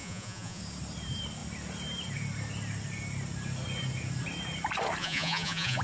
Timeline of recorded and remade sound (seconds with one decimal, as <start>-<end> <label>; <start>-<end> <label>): 0.0-0.6 remade; 0.6-5.0 recorded; 5.0-5.8 remade